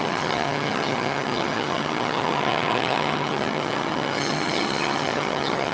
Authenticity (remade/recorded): remade